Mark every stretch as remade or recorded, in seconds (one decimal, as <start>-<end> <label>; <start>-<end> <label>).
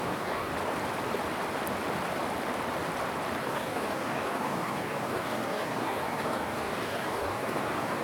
0.0-0.5 remade; 0.5-3.4 recorded; 3.4-8.0 remade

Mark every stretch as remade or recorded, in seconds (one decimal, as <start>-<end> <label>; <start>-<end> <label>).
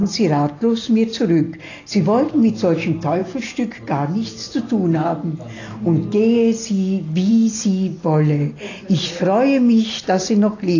0.0-10.8 recorded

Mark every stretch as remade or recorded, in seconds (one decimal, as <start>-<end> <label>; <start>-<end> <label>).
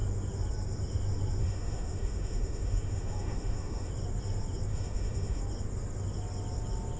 0.0-1.4 recorded; 1.4-3.9 remade; 3.9-4.7 recorded; 4.7-5.4 remade; 5.4-7.0 recorded